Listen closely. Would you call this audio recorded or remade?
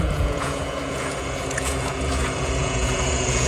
remade